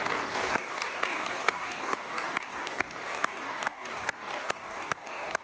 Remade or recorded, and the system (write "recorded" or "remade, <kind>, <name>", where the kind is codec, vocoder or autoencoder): remade, codec, DAC